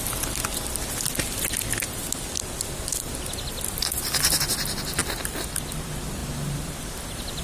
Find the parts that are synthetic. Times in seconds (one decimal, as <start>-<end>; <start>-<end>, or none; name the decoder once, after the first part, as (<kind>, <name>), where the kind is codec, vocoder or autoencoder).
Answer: none